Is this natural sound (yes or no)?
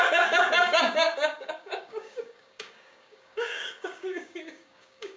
no